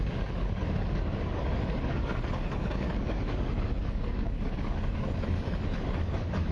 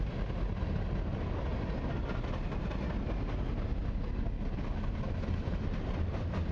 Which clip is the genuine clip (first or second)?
second